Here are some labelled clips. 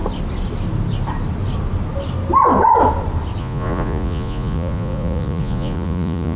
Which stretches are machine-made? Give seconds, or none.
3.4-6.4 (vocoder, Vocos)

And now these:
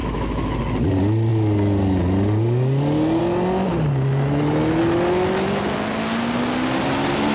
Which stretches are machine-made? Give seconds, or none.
0.0-0.6 (autoencoder, DAC-VAE)

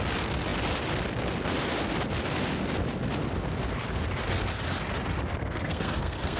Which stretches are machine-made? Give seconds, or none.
5.4-6.4 (codec, SNAC)

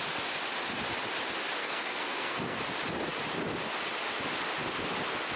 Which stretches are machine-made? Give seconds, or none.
1.6-2.6 (codec, SNAC)

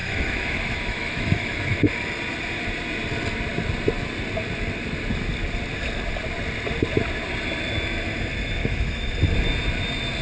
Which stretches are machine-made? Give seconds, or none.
0.0-1.9 (autoencoder, DAC-VAE); 8.6-9.1

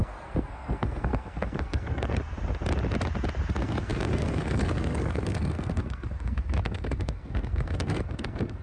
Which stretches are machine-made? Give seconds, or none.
0.0-2.1 (codec, SNAC); 3.5-8.6

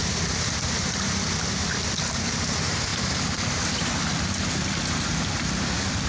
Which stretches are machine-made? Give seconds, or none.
none